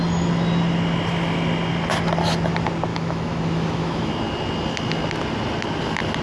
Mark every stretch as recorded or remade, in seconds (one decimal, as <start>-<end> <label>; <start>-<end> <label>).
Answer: 0.0-2.9 recorded; 2.9-4.1 remade; 4.1-6.2 recorded